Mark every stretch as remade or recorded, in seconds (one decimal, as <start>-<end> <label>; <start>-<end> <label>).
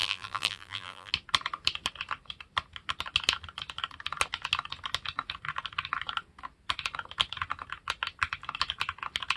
0.0-1.1 remade; 1.1-9.4 recorded